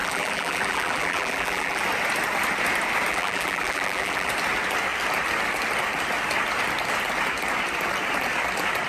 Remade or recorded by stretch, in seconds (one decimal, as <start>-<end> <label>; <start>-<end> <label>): 0.0-1.8 remade; 1.8-3.1 recorded; 3.1-4.3 remade; 4.3-8.9 recorded